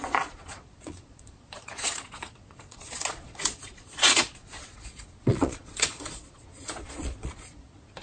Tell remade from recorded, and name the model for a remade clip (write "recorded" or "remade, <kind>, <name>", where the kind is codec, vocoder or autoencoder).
remade, vocoder, Vocos